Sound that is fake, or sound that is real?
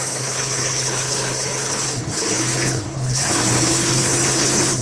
fake